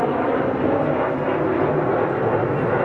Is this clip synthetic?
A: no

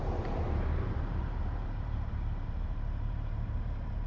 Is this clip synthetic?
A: yes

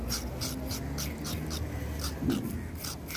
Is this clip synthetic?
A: no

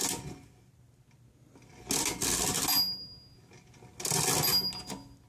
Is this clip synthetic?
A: no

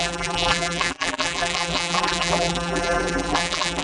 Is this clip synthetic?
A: yes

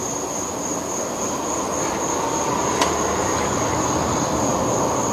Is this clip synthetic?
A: no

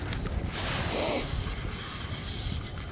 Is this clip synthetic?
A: yes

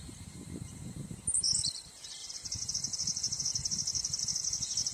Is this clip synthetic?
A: yes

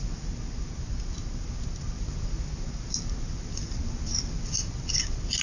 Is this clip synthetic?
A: no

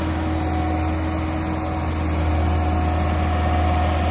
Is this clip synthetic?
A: no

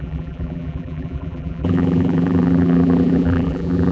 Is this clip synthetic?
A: yes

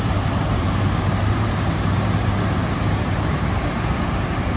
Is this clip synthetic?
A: yes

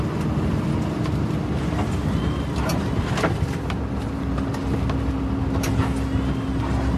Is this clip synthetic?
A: no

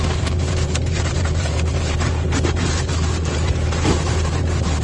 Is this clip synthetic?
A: yes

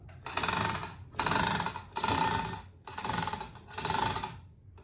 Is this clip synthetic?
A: no